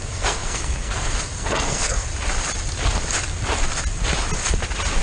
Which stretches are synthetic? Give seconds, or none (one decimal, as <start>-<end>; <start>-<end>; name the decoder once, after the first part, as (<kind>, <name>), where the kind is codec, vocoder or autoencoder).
0.0-2.1 (codec, SNAC)